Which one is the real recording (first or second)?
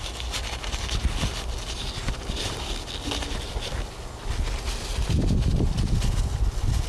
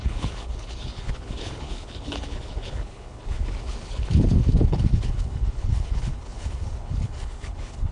first